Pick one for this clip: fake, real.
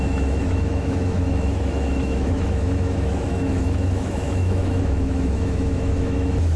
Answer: fake